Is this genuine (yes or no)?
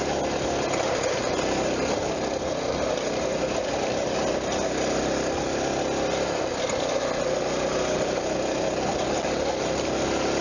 yes